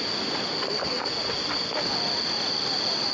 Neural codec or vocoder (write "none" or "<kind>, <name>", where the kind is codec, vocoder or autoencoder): none